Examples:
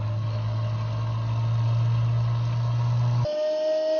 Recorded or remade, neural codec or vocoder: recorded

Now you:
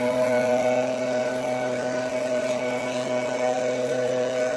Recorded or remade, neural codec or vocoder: remade, vocoder, Vocos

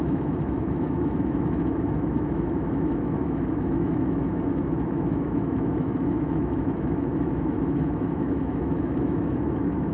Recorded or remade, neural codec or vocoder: remade, autoencoder, DAC-VAE